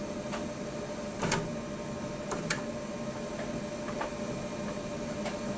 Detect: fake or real real